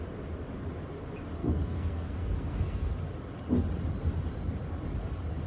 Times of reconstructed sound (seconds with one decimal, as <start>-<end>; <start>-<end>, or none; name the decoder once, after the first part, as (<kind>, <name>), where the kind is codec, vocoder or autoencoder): 1.4-2.9 (codec, SNAC)